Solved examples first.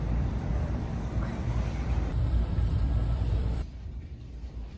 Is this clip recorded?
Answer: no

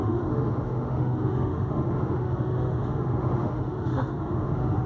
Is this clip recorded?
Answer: no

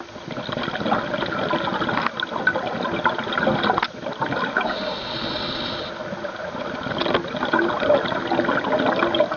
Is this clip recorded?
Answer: yes